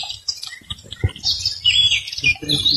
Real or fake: fake